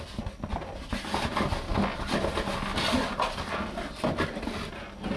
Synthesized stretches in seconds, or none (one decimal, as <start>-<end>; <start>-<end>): none

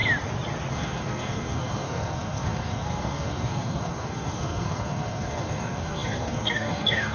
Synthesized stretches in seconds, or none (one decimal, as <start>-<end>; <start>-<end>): 0.7-7.1